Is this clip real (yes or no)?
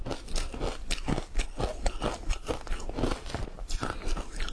yes